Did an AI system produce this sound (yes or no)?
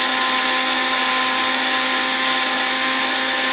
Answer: no